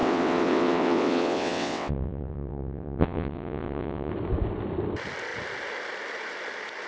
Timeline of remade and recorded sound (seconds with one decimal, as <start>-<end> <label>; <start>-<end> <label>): 0.0-4.1 remade; 4.1-6.9 recorded